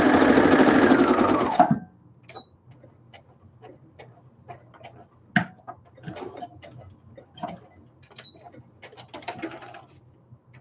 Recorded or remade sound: recorded